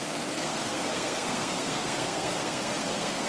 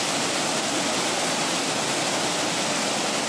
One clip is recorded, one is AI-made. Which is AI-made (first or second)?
first